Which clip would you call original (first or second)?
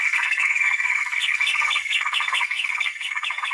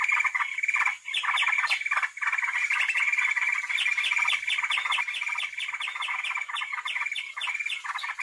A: second